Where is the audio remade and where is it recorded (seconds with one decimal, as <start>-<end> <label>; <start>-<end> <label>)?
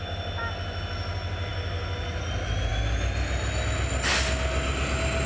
0.0-5.3 recorded